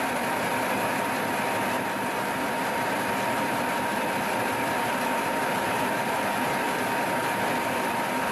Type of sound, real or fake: fake